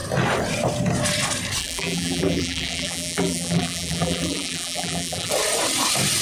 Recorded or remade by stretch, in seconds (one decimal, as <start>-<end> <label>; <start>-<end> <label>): 0.0-1.6 recorded; 1.6-5.3 remade; 5.3-6.2 recorded